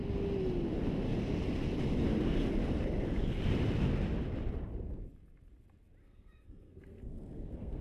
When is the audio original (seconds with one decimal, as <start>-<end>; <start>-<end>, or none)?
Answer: 0.0-6.0